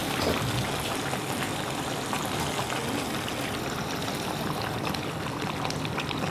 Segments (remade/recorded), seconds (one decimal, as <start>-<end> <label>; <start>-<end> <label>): 0.0-3.8 recorded; 3.8-6.3 remade